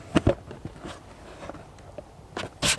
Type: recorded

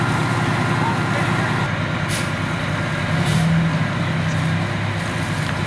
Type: recorded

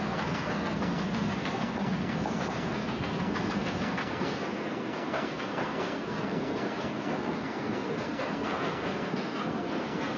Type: remade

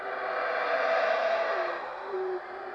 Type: recorded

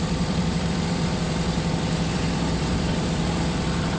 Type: remade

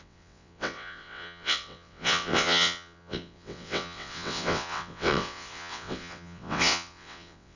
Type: remade